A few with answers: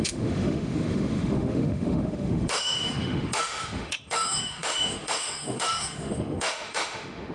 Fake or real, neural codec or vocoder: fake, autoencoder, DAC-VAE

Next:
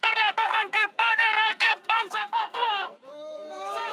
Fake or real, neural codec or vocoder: fake, codec, SNAC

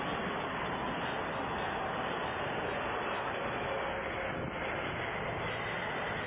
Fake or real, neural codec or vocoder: real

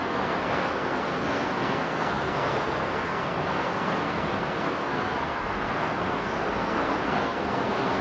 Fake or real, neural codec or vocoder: fake, codec, SNAC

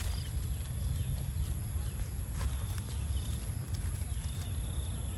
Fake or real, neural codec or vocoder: real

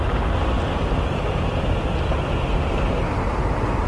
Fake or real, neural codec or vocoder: real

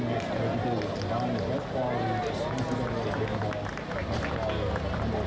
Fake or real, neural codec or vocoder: real